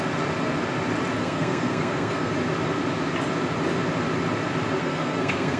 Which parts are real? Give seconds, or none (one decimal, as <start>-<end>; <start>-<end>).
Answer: 0.0-1.2; 2.3-4.8